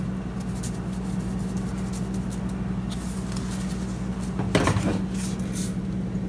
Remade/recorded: recorded